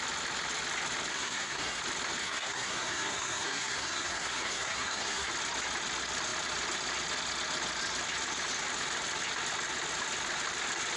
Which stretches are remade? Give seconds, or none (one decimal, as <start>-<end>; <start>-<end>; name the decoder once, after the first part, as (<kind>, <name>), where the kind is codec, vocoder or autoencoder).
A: 1.1-1.8 (codec, SNAC); 2.2-5.3